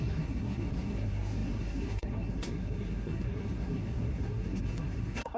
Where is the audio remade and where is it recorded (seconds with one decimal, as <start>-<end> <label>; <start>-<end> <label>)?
0.0-5.4 remade

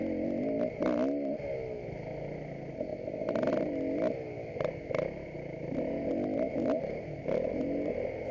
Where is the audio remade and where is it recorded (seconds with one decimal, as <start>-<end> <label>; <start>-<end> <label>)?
0.0-8.3 recorded

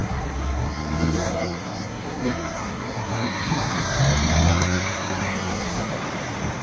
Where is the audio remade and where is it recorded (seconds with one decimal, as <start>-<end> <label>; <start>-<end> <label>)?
0.0-4.0 remade; 4.0-4.5 recorded; 4.5-5.9 remade; 5.9-6.6 recorded

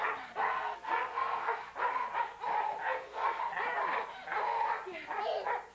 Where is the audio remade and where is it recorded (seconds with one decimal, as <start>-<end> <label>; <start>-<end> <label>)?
0.0-0.4 recorded; 0.4-1.6 remade; 1.6-2.8 recorded; 2.8-3.4 remade; 3.4-5.7 recorded

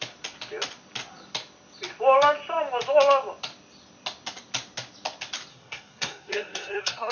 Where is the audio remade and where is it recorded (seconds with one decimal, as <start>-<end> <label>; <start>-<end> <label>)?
0.0-5.5 recorded; 5.5-7.1 remade

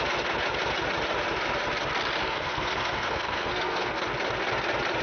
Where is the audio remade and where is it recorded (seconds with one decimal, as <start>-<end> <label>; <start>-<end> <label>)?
0.0-2.2 recorded; 2.2-4.0 remade; 4.0-5.0 recorded

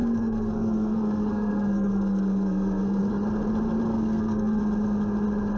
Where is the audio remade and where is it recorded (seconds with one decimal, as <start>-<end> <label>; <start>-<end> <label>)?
0.0-3.0 remade; 3.0-3.9 recorded; 3.9-4.6 remade; 4.6-5.6 recorded